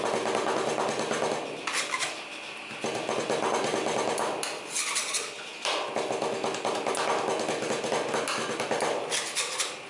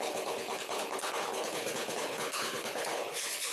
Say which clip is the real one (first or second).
first